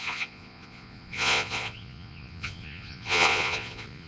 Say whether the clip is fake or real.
fake